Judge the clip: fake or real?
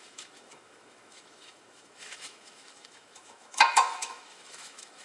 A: fake